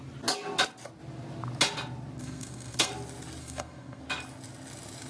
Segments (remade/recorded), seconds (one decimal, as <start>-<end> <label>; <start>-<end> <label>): 0.0-2.2 recorded; 2.2-2.9 remade; 2.9-3.4 recorded; 3.4-4.0 remade; 4.0-5.1 recorded